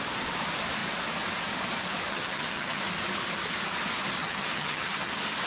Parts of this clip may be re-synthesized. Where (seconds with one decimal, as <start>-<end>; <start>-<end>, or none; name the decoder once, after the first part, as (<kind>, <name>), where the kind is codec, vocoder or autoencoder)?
2.1-2.8 (vocoder, HiFi-GAN); 4.2-5.1